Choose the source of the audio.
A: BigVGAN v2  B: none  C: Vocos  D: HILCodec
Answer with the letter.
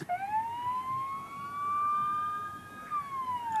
B